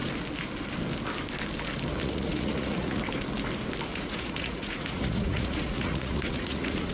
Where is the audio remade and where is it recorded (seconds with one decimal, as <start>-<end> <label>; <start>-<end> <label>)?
0.0-2.0 recorded; 2.0-3.0 remade; 3.0-3.9 recorded; 3.9-6.9 remade